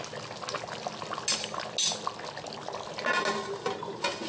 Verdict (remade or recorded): recorded